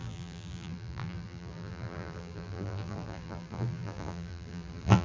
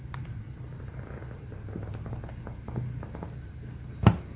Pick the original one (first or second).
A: second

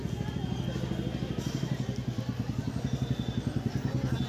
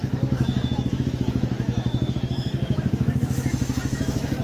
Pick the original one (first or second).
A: first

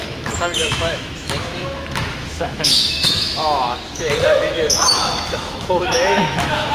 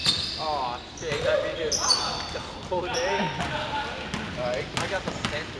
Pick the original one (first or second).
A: second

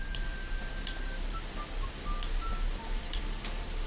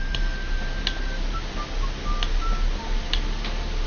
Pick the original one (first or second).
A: second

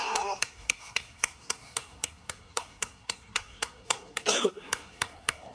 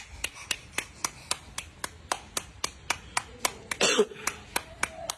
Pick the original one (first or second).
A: second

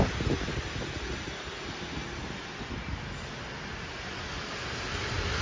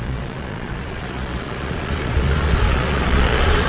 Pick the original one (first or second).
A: first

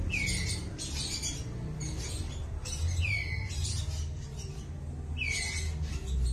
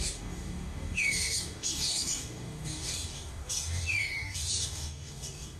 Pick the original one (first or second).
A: first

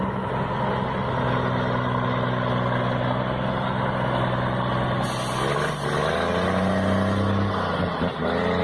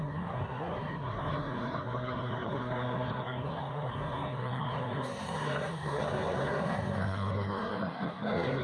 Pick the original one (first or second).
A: first